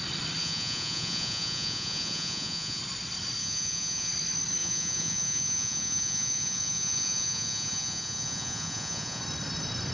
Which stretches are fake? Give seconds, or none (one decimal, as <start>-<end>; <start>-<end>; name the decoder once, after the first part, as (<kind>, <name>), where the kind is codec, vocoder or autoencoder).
0.4-2.8 (vocoder, Vocos); 3.4-4.1; 4.6-9.2